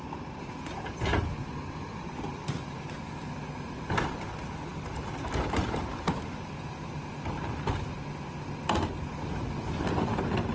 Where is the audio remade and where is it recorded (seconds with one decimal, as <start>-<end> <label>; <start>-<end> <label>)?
0.0-10.5 recorded